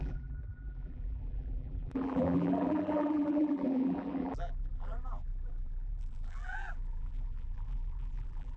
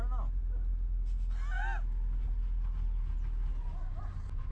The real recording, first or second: second